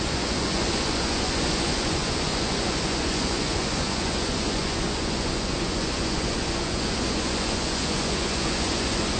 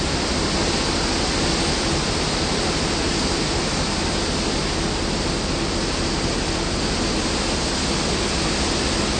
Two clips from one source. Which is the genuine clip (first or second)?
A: second